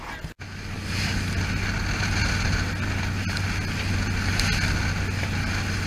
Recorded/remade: recorded